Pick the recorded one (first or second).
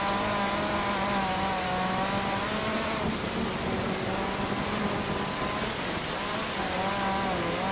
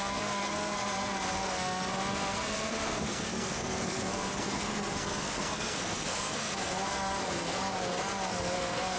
first